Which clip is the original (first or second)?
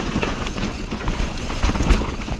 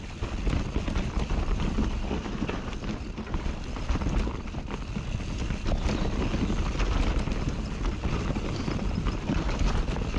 second